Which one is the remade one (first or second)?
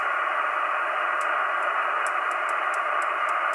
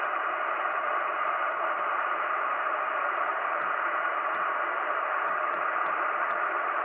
second